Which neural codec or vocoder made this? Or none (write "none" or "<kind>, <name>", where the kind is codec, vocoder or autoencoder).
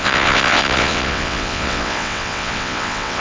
vocoder, WaveNeXt